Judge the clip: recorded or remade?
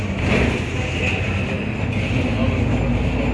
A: recorded